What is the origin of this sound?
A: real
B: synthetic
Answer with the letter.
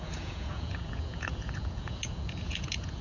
B